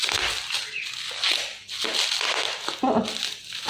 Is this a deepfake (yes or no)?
no